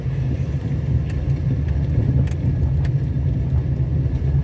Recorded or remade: recorded